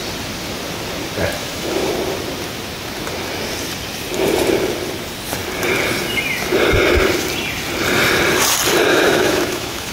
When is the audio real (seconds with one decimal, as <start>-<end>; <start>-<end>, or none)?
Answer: 0.0-1.4; 1.9-8.9